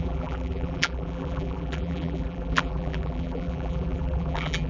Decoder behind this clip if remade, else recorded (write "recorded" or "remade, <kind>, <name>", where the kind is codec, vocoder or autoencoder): remade, vocoder, BigVGAN v2